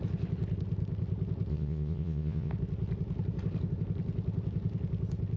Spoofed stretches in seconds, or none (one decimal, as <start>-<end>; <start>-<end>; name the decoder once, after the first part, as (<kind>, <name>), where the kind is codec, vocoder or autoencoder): 1.5-2.5 (vocoder, Vocos)